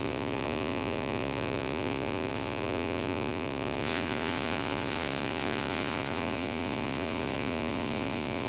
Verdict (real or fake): fake